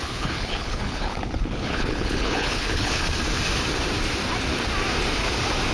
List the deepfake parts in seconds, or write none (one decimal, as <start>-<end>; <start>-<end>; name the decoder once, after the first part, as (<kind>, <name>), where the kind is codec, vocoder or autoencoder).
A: 0.0-3.0 (codec, HILCodec)